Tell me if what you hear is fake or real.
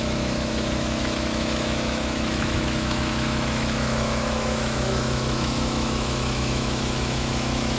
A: fake